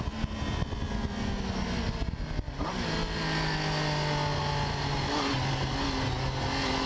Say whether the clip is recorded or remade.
recorded